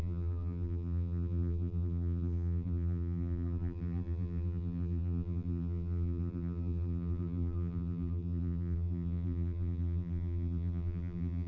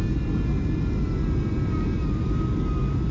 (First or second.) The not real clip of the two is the first